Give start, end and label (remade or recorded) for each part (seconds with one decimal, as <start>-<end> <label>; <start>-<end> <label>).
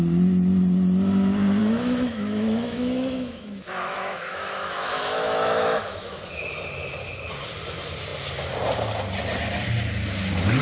0.0-1.6 recorded; 1.6-6.2 remade; 6.2-10.6 recorded